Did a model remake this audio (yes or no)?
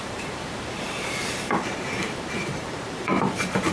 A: yes